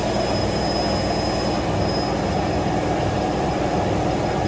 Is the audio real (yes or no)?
yes